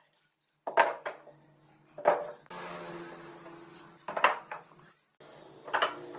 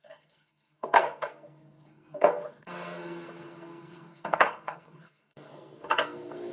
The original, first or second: first